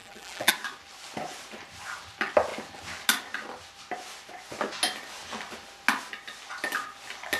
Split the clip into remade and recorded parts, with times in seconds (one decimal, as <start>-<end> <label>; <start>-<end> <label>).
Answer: 0.0-0.5 remade; 0.5-7.4 recorded